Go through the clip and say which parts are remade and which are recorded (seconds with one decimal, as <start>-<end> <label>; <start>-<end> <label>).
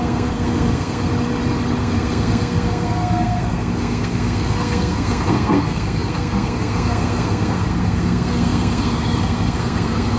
0.0-1.1 remade; 1.1-1.8 recorded; 1.8-10.2 remade